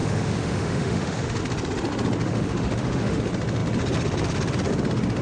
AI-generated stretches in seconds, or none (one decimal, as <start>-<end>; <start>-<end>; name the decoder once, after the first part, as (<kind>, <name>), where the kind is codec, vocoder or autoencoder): 0.0-1.4 (autoencoder, DAC-VAE); 2.2-3.2